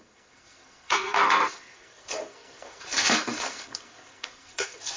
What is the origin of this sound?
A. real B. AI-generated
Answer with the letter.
B